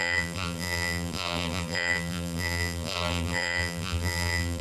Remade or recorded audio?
remade